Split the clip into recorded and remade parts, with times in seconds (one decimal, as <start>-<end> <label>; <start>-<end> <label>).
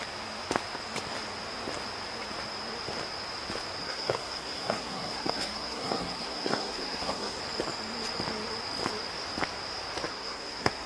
0.0-3.8 recorded; 3.8-7.4 remade; 7.4-10.1 recorded; 10.1-10.9 remade